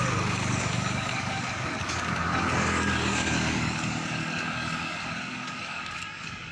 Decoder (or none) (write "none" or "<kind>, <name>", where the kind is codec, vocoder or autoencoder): codec, DAC